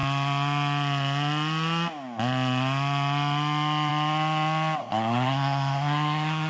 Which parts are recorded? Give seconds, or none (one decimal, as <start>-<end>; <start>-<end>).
0.0-4.8

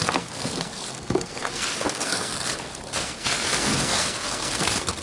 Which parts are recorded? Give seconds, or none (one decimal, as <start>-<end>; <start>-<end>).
none

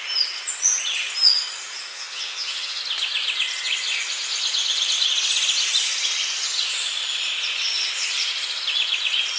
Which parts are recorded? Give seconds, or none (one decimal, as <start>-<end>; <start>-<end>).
0.0-1.9; 2.8-9.4

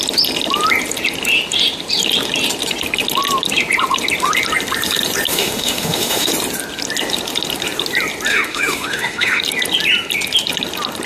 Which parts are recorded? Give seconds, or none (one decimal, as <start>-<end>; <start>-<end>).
0.0-5.3; 6.3-8.3; 9.4-11.1

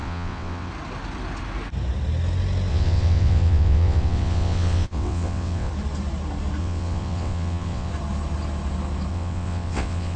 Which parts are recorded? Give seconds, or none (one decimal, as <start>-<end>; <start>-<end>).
0.7-2.7; 5.7-6.6; 7.9-9.1

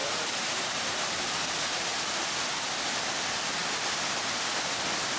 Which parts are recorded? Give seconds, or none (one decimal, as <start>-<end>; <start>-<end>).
1.1-1.9; 3.1-5.2

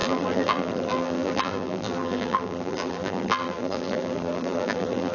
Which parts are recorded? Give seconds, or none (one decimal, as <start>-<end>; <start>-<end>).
none